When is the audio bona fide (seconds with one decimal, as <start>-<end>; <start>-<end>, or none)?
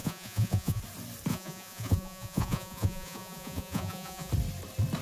0.8-1.3; 4.3-5.0